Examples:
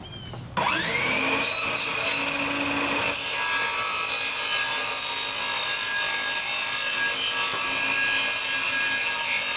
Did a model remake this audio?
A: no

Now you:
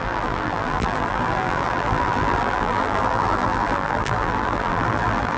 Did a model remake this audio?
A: yes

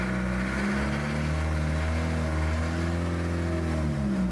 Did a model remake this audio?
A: no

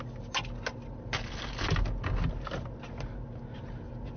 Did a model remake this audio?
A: no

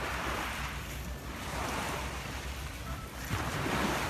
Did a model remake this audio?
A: yes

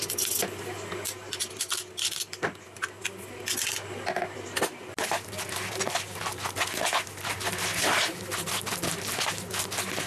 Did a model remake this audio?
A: no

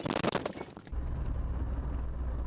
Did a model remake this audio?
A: no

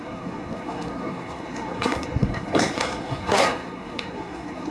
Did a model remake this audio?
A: yes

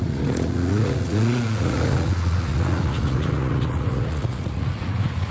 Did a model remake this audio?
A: yes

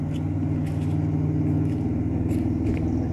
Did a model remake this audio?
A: no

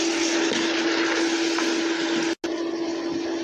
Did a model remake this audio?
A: no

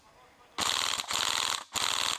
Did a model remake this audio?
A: no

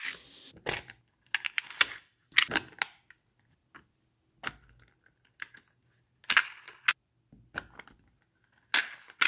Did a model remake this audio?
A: no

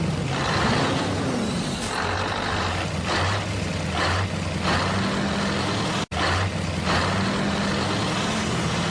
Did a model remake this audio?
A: no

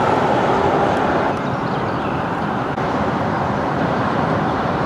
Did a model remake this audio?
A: yes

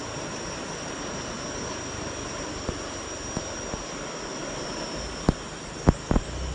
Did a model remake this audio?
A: no